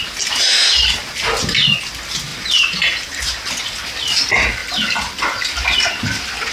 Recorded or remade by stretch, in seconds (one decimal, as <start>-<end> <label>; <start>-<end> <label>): 0.0-2.3 recorded; 2.3-3.4 remade; 3.4-6.5 recorded